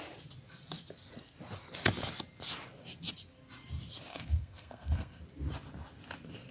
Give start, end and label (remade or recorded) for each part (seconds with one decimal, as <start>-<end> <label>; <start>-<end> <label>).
0.0-4.1 recorded; 4.1-5.2 remade; 5.2-6.5 recorded